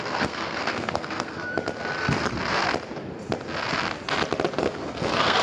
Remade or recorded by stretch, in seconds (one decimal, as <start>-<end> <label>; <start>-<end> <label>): 0.0-1.5 remade; 1.5-4.6 recorded; 4.6-5.4 remade